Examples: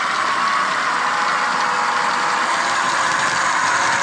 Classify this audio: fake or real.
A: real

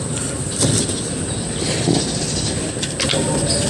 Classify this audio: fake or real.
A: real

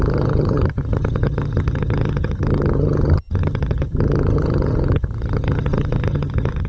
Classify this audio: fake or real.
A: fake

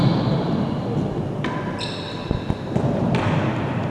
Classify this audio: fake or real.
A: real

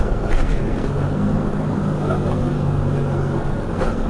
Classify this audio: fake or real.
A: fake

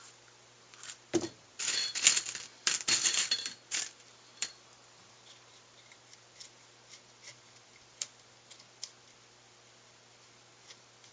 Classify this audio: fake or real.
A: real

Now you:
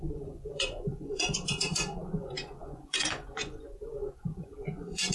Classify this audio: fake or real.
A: fake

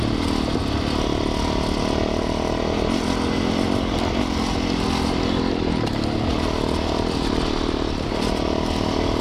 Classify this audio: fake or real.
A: real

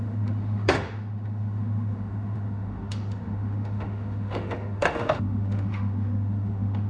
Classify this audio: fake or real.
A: fake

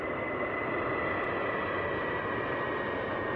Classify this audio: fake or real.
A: real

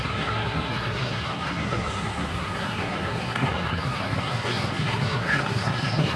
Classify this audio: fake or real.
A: fake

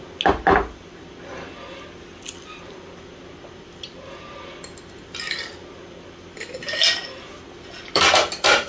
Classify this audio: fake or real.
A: real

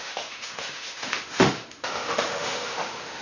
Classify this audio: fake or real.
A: fake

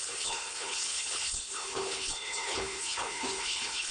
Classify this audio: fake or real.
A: fake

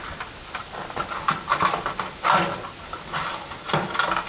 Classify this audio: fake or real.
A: real